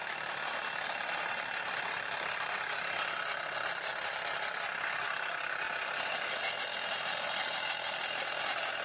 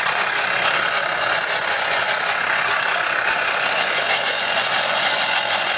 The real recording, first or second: first